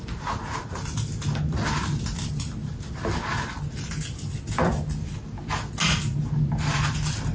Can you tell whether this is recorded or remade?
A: recorded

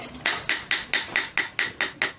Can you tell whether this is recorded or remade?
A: recorded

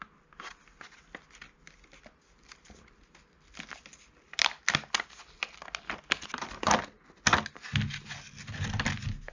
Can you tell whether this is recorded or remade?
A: recorded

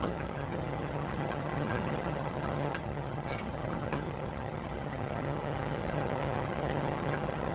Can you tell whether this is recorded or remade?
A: remade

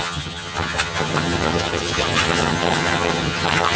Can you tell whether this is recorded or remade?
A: remade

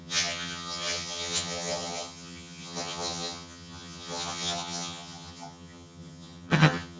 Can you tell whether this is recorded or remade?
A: remade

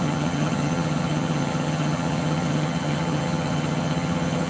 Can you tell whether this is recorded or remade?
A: remade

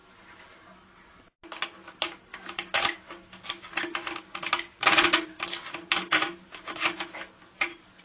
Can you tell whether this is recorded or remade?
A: recorded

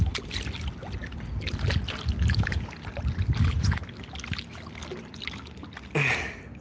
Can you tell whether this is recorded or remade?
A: recorded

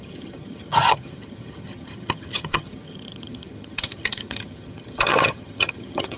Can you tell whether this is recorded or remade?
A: remade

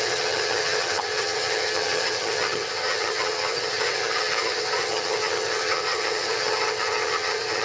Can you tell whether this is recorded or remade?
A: remade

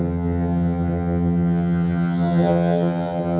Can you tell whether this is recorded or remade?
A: remade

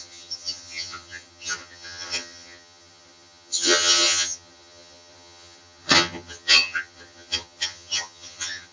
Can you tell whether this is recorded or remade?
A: remade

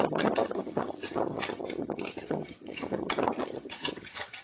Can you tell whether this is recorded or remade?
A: remade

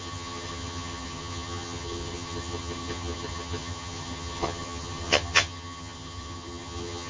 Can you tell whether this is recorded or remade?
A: remade